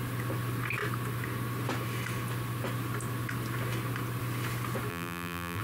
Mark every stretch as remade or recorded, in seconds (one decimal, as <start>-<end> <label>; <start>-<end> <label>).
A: 0.0-4.9 recorded; 4.9-5.6 remade